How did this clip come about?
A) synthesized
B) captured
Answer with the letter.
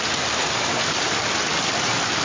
B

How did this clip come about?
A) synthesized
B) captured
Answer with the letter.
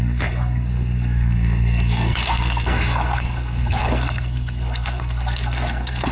A